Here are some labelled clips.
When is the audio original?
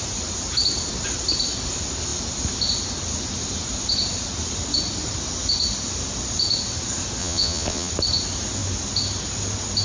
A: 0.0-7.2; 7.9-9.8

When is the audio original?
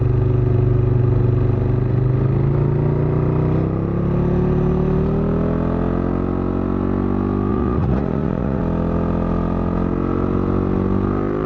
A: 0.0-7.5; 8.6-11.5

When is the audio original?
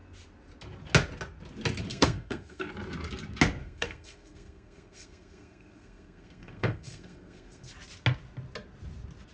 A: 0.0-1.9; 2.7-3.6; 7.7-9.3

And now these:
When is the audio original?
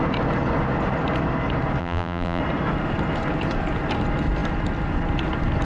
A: 0.0-1.8; 2.4-5.6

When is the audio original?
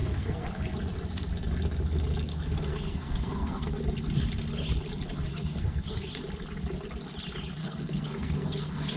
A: 0.5-2.3; 3.8-5.3; 6.1-7.6